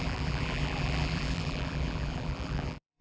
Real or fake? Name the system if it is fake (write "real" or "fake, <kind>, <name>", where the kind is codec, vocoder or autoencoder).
fake, vocoder, BigVGAN v2